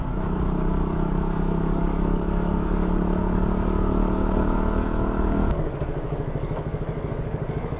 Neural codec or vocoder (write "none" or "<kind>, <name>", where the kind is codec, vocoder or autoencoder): codec, DAC